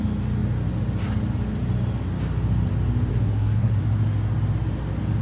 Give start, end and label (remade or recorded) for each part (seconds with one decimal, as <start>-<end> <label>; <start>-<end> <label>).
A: 0.0-3.1 recorded; 3.1-3.8 remade; 3.8-5.2 recorded